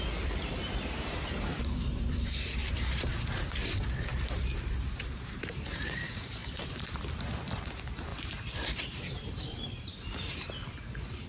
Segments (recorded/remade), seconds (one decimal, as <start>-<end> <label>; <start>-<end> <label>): 0.0-11.3 remade